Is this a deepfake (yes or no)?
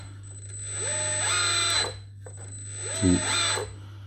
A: no